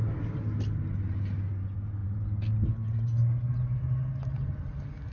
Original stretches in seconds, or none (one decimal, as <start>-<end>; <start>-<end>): 0.0-5.1